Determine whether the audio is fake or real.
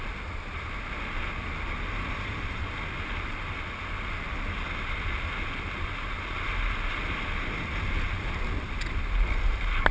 real